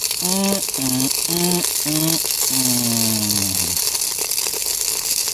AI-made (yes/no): no